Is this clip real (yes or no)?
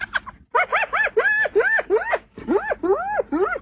yes